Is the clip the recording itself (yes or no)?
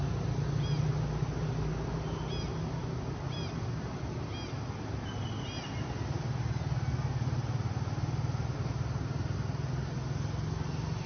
yes